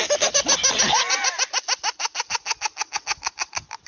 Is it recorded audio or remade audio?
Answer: recorded